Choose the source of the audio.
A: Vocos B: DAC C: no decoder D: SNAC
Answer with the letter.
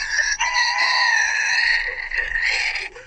A